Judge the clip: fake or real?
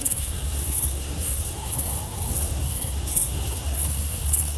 fake